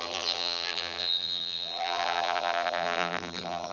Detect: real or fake fake